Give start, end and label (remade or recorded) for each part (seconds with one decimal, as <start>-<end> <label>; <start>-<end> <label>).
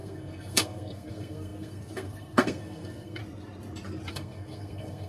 0.0-3.2 remade; 3.2-4.1 recorded; 4.1-5.1 remade